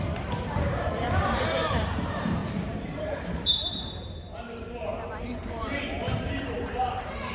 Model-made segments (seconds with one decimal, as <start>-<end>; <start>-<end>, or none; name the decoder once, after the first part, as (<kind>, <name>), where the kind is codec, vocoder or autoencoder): 0.0-2.4 (vocoder, BigVGAN v2); 3.1-7.3